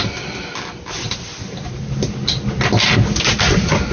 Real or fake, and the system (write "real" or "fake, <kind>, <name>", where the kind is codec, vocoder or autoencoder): real